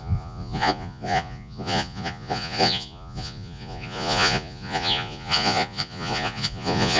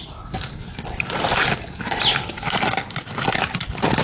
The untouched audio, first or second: second